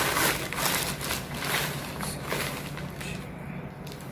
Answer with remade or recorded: recorded